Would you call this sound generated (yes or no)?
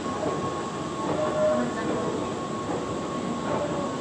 no